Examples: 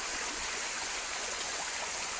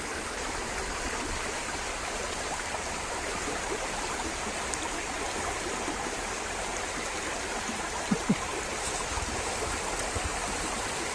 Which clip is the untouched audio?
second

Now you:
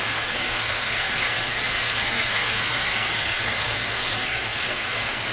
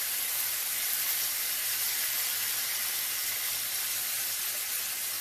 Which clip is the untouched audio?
second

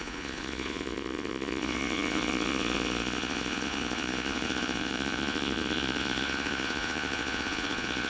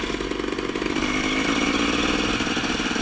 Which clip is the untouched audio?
second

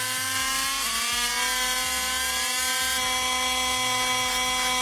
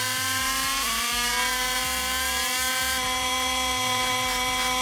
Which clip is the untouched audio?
first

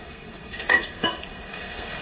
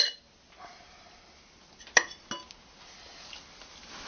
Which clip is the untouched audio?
second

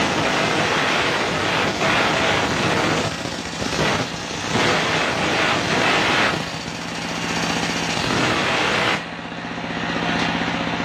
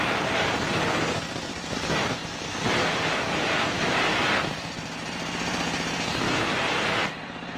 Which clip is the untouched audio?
first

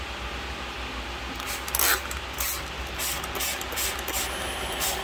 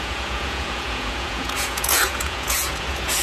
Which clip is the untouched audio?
first